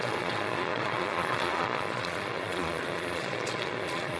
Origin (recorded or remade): remade